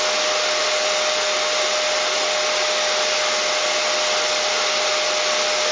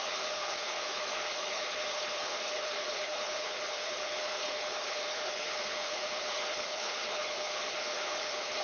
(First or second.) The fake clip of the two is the second